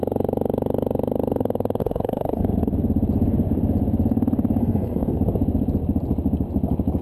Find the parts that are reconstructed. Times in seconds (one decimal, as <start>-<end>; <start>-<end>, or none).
1.8-2.4; 4.6-5.2